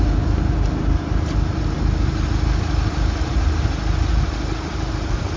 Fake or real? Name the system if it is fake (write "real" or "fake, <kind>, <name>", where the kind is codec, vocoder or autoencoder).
real